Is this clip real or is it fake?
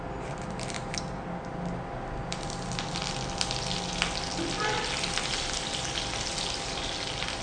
real